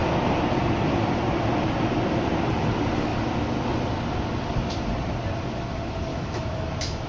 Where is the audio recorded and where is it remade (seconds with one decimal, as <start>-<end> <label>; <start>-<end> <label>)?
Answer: 0.0-6.1 recorded; 6.1-7.1 remade